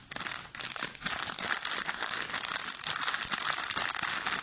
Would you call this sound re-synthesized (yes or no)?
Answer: no